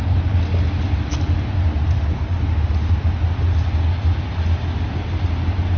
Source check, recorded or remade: recorded